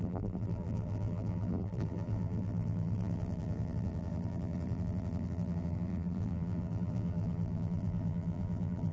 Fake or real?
fake